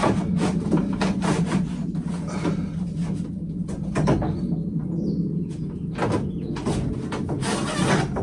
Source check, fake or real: real